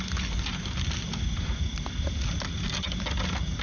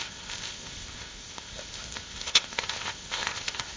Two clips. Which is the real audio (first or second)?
first